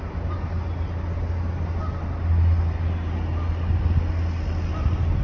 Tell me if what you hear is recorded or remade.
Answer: recorded